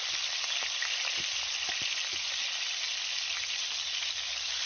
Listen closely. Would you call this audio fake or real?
real